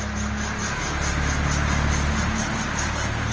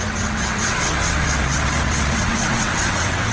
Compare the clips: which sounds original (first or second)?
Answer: first